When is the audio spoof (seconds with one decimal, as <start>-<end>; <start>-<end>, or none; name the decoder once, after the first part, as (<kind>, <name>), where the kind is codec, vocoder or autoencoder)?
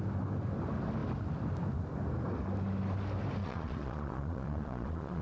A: 3.4-5.2 (vocoder, Vocos)